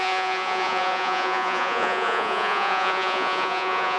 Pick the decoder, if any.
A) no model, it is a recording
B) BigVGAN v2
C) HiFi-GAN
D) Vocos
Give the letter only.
D